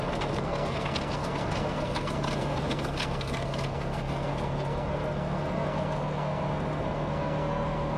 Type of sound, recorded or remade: remade